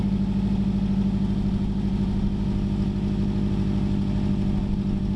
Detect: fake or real real